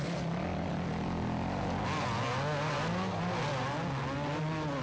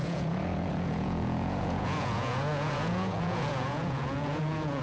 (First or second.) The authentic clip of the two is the first